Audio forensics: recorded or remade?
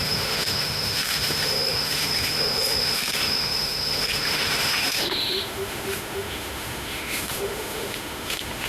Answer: remade